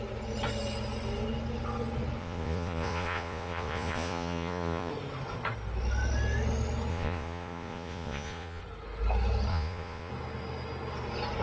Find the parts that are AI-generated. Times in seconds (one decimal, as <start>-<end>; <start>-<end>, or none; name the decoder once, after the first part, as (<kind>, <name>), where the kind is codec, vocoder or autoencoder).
2.2-4.9 (vocoder, Vocos); 6.9-8.6; 9.5-10.1